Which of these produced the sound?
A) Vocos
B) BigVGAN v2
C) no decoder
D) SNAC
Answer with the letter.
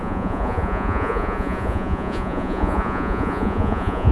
A